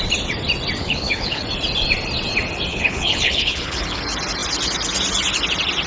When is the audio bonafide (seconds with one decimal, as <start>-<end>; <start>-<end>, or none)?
0.0-0.8; 1.4-2.7; 4.0-5.9